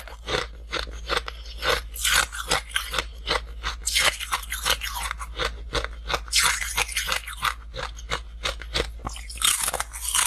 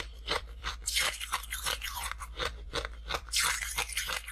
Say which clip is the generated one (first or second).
second